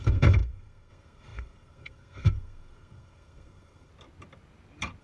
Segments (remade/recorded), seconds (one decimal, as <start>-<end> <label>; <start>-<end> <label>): 0.0-3.9 remade; 3.9-5.0 recorded